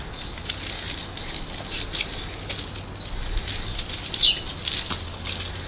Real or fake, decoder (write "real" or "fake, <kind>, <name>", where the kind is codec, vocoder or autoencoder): real